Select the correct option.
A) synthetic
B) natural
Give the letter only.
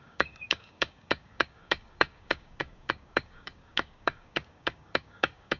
A